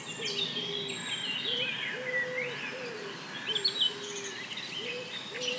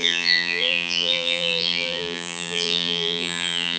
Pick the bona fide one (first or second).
first